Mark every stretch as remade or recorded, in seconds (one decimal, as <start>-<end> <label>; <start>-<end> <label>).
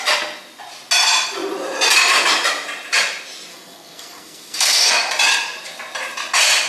0.0-3.5 recorded; 3.5-4.9 remade; 4.9-6.7 recorded